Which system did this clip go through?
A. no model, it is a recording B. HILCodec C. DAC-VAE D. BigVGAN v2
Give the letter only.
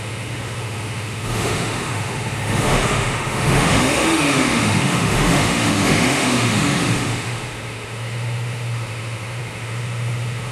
C